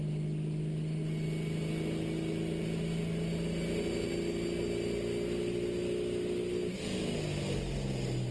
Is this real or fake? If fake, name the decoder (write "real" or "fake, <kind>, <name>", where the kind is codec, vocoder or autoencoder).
real